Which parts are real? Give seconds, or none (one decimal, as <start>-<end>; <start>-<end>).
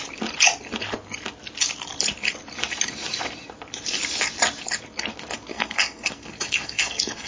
0.0-5.5